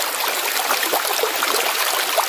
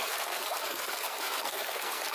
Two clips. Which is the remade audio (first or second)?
second